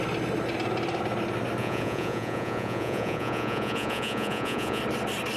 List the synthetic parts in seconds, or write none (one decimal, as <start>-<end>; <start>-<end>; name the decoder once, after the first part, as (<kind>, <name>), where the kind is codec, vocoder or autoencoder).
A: 1.6-4.8 (vocoder, Vocos)